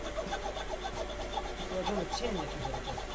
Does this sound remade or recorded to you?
recorded